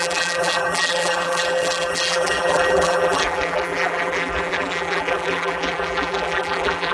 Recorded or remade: remade